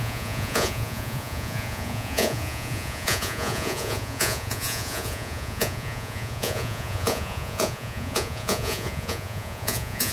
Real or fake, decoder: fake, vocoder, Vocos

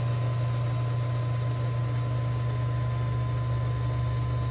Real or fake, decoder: real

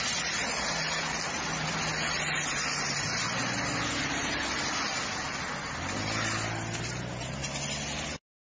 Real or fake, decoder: real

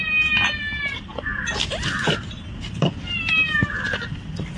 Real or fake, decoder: real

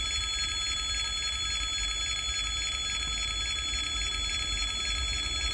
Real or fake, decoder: real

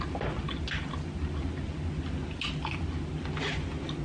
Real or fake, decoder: real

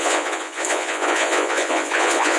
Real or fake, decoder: fake, vocoder, Vocos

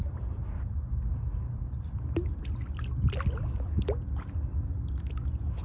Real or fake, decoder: real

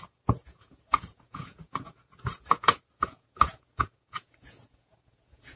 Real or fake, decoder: fake, vocoder, Vocos